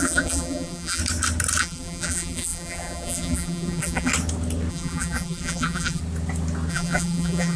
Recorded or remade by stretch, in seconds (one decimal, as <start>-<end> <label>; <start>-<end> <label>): 0.0-1.0 remade; 1.0-1.6 recorded; 1.6-4.1 remade; 4.1-4.7 recorded; 4.7-6.0 remade; 6.0-6.7 recorded; 6.7-7.6 remade